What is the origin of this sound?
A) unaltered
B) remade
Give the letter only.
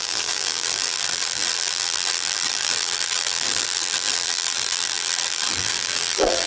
B